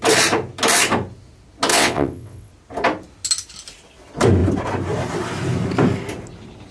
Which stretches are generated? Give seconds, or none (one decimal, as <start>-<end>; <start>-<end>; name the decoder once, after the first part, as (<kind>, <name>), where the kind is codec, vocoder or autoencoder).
1.7-2.5 (vocoder, WaveNeXt)